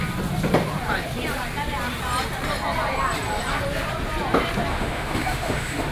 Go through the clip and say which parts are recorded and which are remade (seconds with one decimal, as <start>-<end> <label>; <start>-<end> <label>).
0.0-4.7 recorded; 4.7-5.9 remade